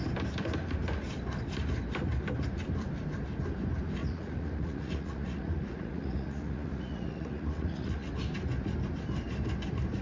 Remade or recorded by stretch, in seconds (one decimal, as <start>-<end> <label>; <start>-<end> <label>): 0.0-4.0 recorded; 4.0-8.1 remade; 8.1-10.0 recorded